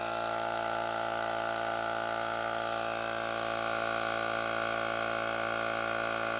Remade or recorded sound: recorded